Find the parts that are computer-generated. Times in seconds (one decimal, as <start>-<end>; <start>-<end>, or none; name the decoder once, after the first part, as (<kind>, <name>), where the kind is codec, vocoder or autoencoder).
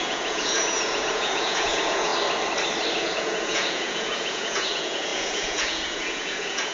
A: 0.0-2.1 (vocoder, Vocos); 3.0-6.7